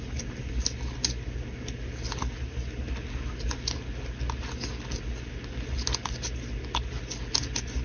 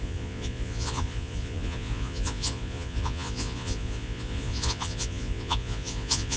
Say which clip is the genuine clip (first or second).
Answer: first